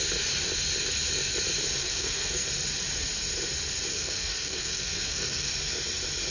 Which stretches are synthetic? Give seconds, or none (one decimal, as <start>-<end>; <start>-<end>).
1.8-2.5; 3.9-5.5